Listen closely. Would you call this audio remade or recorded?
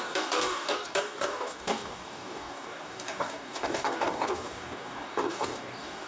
remade